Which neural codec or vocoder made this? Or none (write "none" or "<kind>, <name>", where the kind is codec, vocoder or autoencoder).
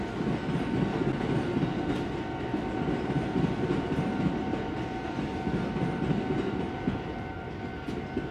none